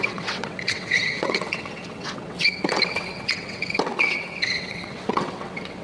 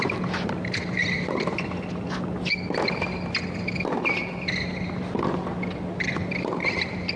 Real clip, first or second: second